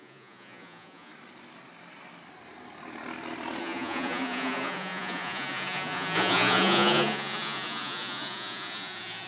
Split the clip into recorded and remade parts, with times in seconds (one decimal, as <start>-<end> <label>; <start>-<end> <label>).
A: 0.0-1.1 remade; 1.1-3.6 recorded; 3.6-9.3 remade